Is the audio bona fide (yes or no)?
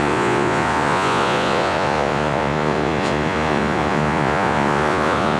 no